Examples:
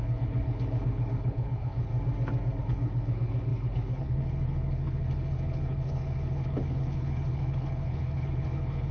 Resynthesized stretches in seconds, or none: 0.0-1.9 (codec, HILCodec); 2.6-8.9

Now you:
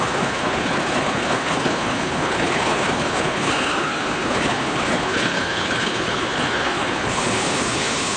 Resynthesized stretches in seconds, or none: 0.0-8.2 (codec, HILCodec)